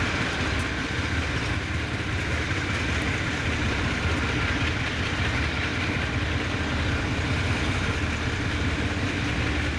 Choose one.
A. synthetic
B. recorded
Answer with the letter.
B